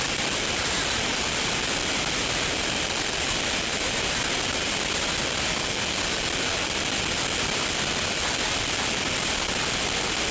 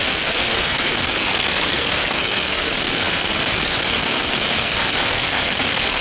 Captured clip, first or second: first